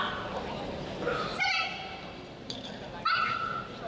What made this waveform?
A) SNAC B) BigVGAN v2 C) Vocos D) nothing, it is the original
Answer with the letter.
D